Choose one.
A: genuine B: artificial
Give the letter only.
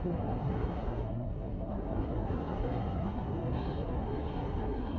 B